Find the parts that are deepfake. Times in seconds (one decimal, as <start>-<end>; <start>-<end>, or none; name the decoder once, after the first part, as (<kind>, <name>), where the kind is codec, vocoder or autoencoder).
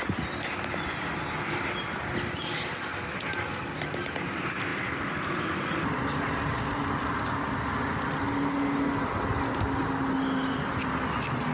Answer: 4.7-6.2 (vocoder, BigVGAN v2)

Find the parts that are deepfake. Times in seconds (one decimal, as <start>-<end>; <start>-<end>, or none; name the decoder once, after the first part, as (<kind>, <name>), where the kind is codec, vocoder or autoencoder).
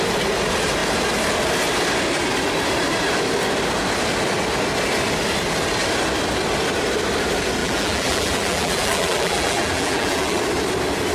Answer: 7.6-10.4 (vocoder, BigVGAN v2)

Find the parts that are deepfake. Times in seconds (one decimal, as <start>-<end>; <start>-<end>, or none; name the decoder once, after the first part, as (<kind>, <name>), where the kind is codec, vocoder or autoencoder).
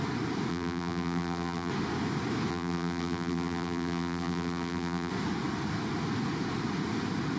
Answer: 0.5-1.7 (vocoder, BigVGAN v2); 2.5-5.1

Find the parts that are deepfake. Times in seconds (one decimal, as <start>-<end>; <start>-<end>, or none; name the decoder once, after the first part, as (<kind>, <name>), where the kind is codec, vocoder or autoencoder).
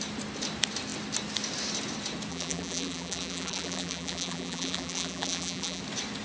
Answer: 2.3-5.8 (vocoder, BigVGAN v2)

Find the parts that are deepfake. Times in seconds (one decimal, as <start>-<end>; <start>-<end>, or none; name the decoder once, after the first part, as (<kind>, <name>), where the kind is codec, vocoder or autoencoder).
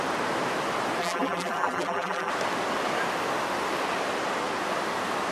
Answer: 1.0-2.3 (vocoder, BigVGAN v2)